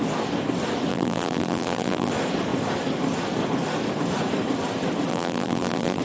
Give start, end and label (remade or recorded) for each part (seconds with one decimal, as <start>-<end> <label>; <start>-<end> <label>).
0.0-0.9 recorded; 0.9-2.1 remade; 2.1-5.1 recorded; 5.1-6.0 remade